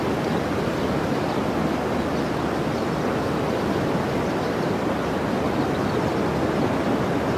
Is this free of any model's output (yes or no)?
yes